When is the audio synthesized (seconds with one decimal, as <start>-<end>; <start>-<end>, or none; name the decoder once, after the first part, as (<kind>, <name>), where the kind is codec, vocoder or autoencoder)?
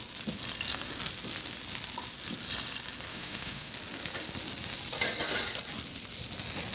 3.1-3.7 (autoencoder, DAC-VAE)